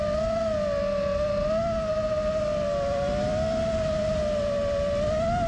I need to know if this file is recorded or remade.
recorded